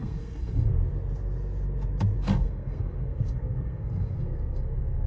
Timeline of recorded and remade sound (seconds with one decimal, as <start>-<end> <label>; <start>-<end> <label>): 0.0-0.7 remade; 0.7-2.4 recorded; 2.4-5.1 remade